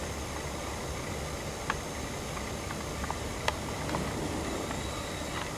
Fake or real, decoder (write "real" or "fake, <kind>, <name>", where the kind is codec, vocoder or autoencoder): real